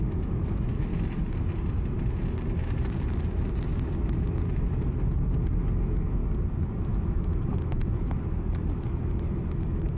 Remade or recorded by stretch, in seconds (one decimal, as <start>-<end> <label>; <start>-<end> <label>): 0.0-0.9 remade; 0.9-5.8 recorded; 5.8-6.2 remade; 6.2-6.8 recorded; 6.8-10.0 remade